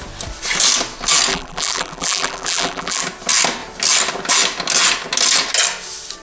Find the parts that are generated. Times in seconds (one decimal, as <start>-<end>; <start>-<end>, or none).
1.3-3.0